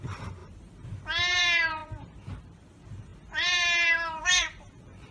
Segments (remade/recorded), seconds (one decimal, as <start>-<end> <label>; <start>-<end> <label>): 0.0-5.1 remade